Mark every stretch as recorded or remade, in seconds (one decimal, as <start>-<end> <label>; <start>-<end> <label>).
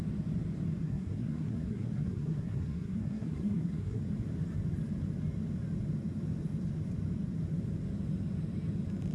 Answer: 0.0-0.8 recorded; 0.8-4.0 remade; 4.0-9.1 recorded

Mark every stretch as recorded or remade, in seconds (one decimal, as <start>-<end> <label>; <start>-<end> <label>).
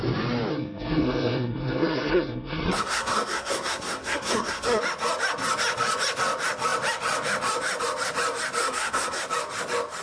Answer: 0.0-0.5 recorded; 0.5-4.8 remade; 4.8-8.6 recorded; 8.6-9.2 remade; 9.2-10.0 recorded